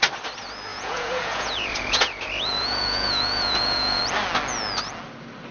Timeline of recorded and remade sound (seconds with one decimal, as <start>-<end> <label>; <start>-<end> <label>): 0.0-0.7 recorded; 0.7-4.0 remade; 4.0-5.5 recorded